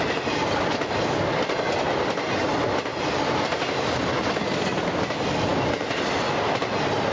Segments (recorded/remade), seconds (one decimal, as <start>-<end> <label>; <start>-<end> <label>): 0.0-7.1 recorded